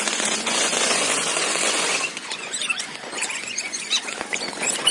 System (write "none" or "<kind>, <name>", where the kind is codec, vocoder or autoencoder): vocoder, Vocos